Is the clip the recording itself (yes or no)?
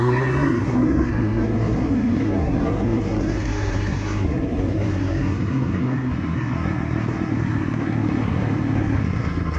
no